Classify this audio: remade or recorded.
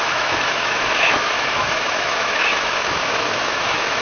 remade